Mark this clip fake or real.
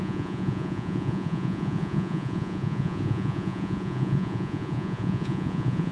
fake